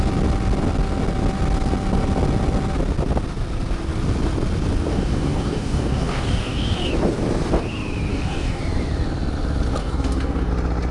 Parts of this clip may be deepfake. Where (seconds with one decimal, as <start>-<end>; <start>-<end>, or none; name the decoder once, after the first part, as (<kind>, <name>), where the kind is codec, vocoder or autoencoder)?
4.9-6.9 (codec, DAC); 8.1-8.6; 9.8-10.5